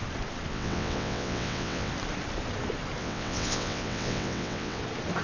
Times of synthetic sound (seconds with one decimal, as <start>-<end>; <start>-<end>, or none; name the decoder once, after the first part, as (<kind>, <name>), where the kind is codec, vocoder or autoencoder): 0.5-1.9 (vocoder, WaveNeXt); 3.0-4.8